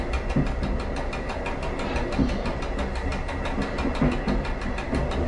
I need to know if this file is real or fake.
real